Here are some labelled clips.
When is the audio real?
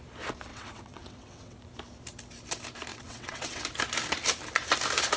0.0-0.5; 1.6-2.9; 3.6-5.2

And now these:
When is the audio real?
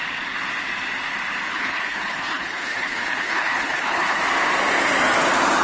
0.0-1.5; 4.2-5.6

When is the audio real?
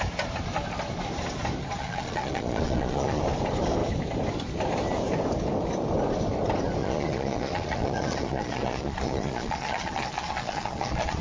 0.0-1.8; 3.2-6.8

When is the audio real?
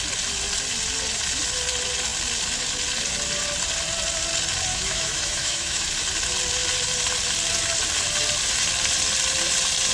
0.0-4.7; 5.9-9.9